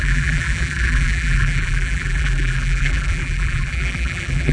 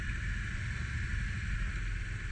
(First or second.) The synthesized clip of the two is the first